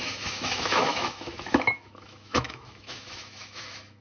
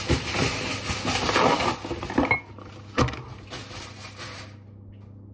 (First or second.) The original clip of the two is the second